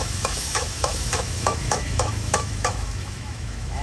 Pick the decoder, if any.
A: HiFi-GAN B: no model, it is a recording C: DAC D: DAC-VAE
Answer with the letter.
D